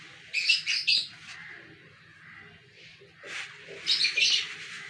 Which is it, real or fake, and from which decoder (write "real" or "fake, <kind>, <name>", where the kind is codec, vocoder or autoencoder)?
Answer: real